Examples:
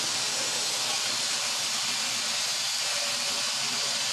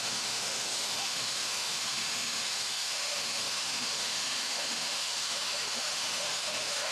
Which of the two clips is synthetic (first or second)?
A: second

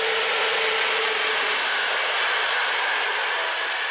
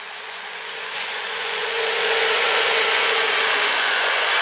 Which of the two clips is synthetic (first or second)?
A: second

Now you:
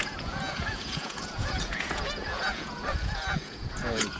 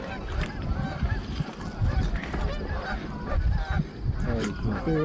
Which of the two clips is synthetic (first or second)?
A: first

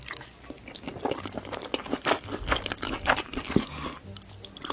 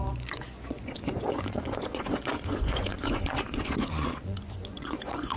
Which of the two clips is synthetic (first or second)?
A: second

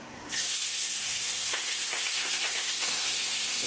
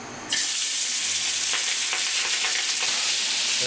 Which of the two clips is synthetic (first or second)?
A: first